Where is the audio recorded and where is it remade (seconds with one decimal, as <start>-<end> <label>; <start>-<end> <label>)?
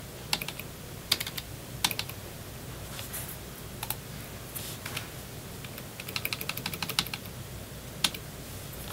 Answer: 0.0-8.9 recorded